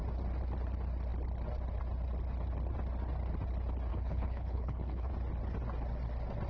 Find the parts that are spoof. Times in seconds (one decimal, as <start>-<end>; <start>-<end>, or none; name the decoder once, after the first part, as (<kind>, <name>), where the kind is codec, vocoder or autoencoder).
3.9-5.1 (codec, HILCodec)